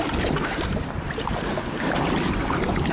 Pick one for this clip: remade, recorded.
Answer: remade